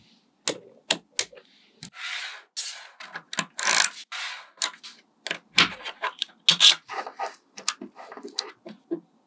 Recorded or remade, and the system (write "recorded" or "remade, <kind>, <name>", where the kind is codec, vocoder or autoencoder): recorded